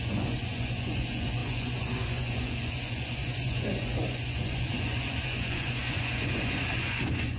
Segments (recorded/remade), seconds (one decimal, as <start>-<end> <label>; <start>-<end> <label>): 0.0-7.4 remade